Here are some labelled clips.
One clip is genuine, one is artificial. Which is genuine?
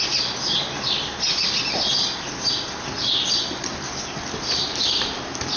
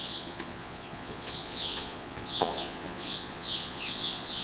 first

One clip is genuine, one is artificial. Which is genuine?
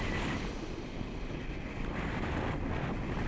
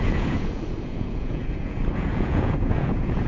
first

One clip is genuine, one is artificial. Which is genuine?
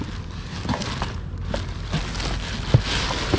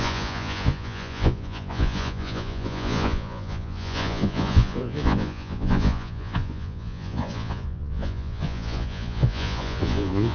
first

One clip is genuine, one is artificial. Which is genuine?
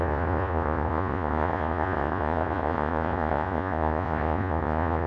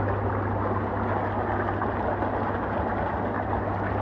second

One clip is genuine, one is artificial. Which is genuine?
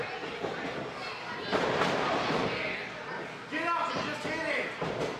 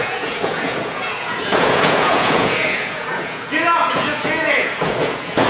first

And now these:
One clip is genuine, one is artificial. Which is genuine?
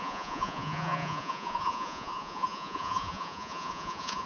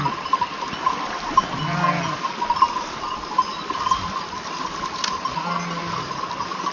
second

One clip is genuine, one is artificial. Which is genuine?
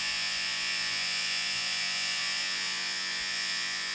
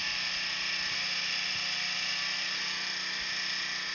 second